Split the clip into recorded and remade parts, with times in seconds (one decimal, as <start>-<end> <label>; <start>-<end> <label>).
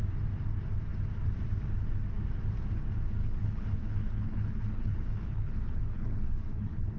0.0-3.2 recorded; 3.2-7.0 remade